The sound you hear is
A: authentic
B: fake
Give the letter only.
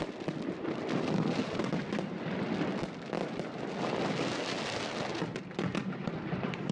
A